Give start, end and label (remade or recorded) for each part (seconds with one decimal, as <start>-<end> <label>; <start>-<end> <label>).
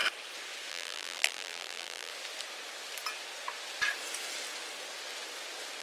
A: 0.0-0.7 recorded; 0.7-2.1 remade; 2.1-5.8 recorded